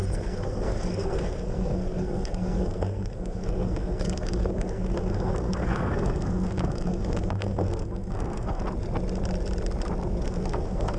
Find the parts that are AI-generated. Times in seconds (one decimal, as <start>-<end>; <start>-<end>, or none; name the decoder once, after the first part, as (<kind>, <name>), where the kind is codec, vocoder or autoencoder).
0.0-8.6 (codec, SNAC); 10.2-11.0